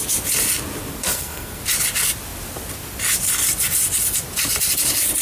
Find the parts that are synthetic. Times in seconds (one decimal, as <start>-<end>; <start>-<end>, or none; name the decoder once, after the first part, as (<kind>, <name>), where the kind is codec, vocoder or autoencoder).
1.0-1.6 (codec, SNAC)